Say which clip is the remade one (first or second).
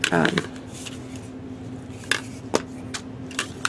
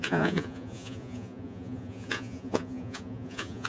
second